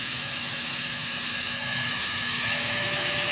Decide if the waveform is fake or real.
fake